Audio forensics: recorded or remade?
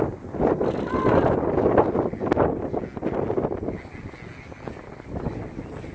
recorded